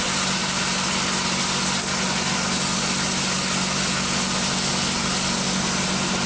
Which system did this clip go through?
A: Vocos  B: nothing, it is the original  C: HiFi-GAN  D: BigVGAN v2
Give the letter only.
B